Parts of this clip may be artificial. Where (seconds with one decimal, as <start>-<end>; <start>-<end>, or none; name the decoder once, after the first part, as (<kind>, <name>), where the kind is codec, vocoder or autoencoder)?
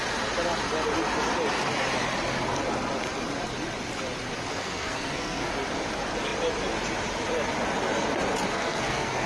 4.5-5.5 (codec, SNAC); 8.5-9.3